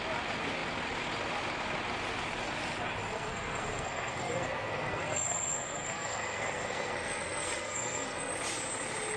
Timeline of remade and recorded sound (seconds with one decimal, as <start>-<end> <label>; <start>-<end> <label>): 0.0-3.1 recorded; 3.1-8.3 remade; 8.3-9.2 recorded